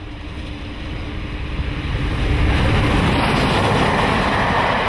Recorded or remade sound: recorded